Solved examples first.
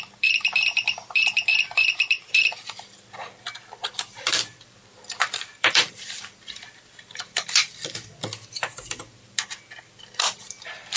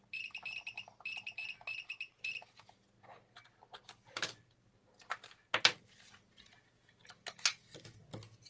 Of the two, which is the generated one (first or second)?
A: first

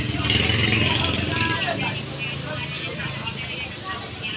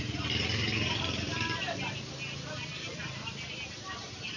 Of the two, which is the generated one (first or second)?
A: second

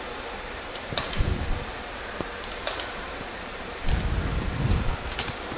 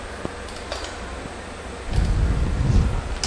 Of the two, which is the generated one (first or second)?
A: first